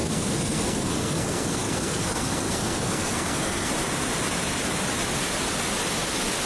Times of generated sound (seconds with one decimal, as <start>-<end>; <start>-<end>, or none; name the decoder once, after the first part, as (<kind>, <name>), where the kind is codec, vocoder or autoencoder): 0.0-3.7 (codec, SNAC)